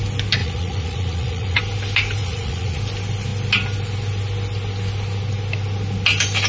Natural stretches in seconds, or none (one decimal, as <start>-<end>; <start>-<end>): 0.0-0.4; 1.6-2.2; 2.8-6.5

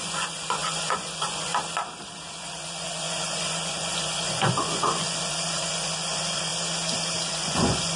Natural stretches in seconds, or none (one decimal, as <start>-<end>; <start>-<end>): 1.5-2.3; 6.5-7.3

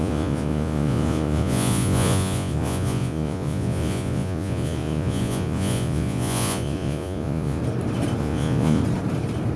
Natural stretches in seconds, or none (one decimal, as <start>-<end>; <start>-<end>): 7.6-8.2; 8.8-9.6

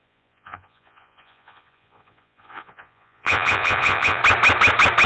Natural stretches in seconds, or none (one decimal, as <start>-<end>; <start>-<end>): 4.2-5.1

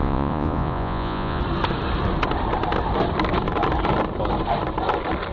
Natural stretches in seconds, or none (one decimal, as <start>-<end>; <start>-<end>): 1.4-5.3

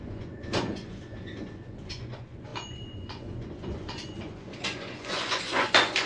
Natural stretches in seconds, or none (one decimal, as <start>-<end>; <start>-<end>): none

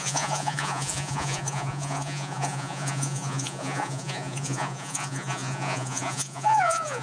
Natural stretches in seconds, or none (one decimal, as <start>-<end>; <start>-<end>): none